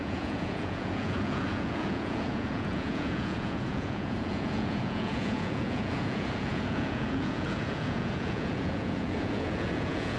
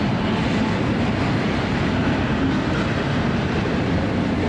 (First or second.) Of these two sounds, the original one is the second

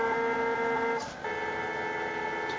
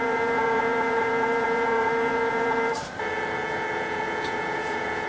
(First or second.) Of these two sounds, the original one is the first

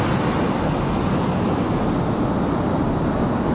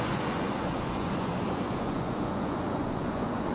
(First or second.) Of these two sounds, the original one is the first